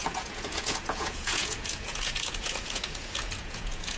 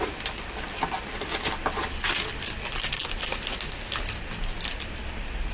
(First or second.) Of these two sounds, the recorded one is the second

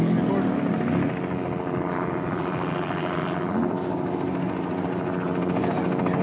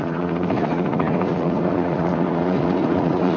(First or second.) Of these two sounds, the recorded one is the first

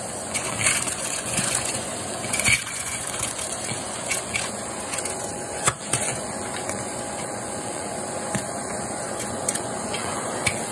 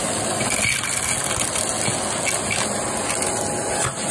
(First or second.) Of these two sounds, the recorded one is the second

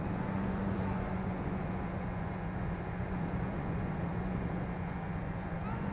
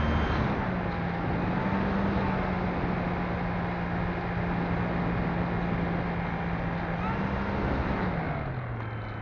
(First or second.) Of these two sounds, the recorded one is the second